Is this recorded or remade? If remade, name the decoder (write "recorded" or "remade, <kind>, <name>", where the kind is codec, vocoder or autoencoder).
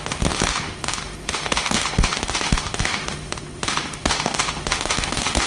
remade, autoencoder, DAC-VAE